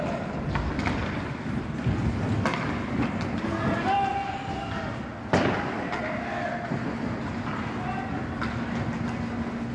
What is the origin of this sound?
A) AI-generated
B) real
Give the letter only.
B